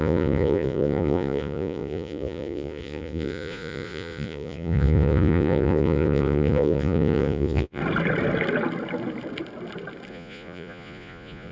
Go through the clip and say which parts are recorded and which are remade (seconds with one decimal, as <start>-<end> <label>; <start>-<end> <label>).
0.0-7.8 remade; 7.8-10.1 recorded; 10.1-11.5 remade